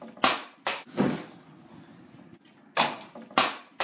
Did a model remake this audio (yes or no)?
no